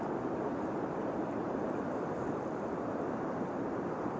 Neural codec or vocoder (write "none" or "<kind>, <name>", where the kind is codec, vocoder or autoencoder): vocoder, BigVGAN v2